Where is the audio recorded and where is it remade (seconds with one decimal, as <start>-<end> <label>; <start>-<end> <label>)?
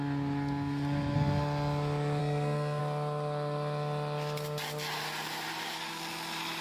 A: 0.0-2.2 recorded; 2.2-2.8 remade; 2.8-6.6 recorded